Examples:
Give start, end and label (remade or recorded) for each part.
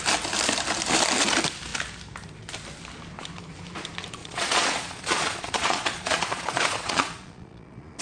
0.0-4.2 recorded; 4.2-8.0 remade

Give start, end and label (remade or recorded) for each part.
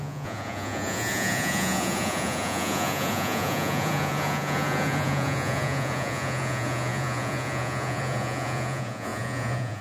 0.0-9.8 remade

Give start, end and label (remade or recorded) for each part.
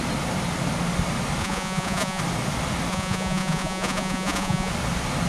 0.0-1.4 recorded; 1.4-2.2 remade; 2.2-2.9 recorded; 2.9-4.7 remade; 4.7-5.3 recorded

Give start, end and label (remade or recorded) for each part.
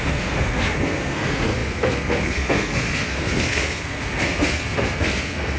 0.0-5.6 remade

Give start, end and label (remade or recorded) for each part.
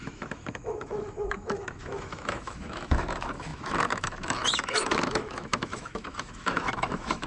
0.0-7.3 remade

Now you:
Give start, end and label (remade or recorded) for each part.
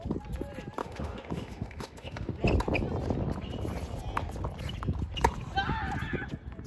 0.0-0.8 recorded; 0.8-2.3 remade; 2.3-6.7 recorded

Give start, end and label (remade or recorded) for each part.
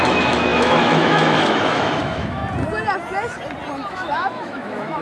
0.0-2.4 remade; 2.4-3.9 recorded; 3.9-5.0 remade